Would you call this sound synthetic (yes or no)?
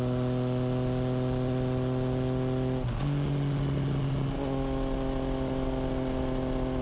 no